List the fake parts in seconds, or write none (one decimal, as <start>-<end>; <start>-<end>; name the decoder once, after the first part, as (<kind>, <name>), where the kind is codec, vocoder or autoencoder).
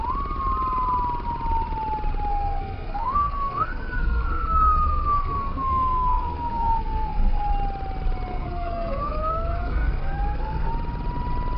2.3-7.5 (codec, SNAC); 8.3-10.7